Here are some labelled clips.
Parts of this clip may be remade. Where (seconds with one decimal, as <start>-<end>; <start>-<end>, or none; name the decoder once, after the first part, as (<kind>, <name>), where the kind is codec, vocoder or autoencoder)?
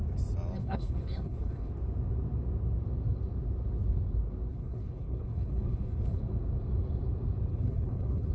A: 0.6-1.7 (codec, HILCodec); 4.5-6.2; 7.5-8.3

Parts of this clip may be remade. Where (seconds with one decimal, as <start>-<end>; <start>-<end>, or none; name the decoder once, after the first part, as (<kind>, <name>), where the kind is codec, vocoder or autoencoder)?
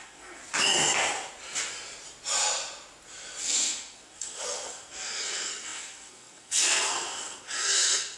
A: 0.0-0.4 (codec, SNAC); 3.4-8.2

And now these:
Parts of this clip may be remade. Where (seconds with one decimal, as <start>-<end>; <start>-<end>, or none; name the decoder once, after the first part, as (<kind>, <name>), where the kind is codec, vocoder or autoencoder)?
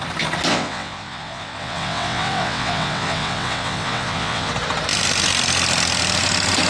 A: 0.5-4.5 (vocoder, WaveNeXt)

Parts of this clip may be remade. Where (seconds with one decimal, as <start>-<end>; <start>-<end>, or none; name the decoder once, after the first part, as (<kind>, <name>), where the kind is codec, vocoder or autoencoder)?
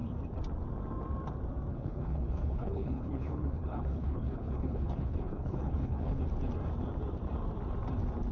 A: 1.7-6.2 (codec, HILCodec)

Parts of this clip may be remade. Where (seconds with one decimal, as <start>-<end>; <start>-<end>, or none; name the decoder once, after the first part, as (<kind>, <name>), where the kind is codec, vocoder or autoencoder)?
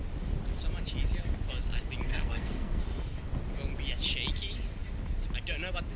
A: 2.1-2.8 (codec, SNAC)